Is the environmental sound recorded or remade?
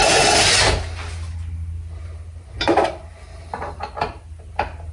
recorded